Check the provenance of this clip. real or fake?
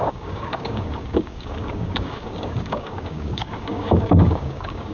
fake